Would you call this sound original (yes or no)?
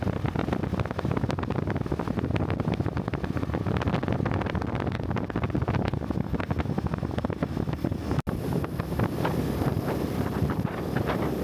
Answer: yes